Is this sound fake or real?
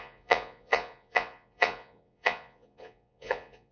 fake